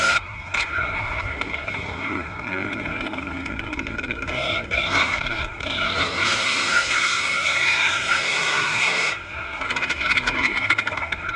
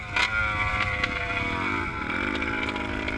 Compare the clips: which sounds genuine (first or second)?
second